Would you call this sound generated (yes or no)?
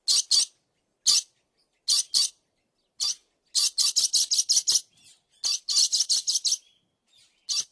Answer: no